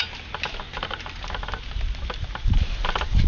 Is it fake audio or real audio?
real